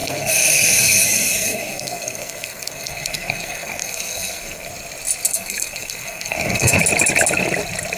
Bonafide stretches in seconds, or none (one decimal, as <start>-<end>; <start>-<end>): 4.7-5.3; 6.8-8.0

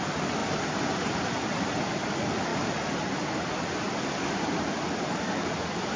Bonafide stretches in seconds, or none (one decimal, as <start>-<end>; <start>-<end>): 0.0-6.0